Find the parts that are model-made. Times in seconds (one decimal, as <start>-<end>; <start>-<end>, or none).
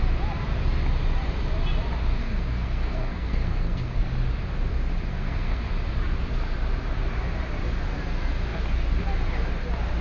2.2-4.1; 5.1-5.7